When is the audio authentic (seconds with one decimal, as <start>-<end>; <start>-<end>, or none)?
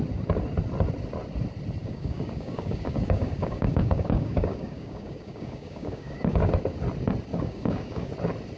0.0-1.8; 6.5-7.3; 8.1-8.6